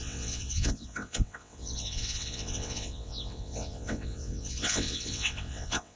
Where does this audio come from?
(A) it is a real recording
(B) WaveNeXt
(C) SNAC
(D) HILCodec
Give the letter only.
B